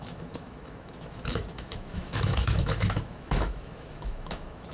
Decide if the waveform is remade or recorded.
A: remade